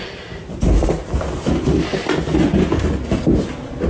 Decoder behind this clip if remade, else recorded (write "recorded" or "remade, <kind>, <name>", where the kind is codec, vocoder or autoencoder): remade, vocoder, BigVGAN v2